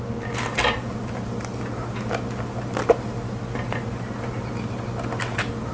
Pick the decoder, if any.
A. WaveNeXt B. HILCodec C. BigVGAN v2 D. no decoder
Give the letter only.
D